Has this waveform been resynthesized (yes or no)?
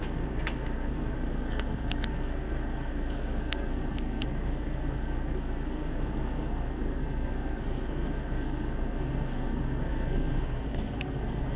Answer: yes